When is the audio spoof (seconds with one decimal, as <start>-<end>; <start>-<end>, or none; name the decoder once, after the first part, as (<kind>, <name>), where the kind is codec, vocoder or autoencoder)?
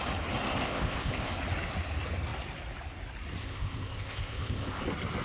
0.6-1.3 (codec, ZipCodec); 3.4-4.8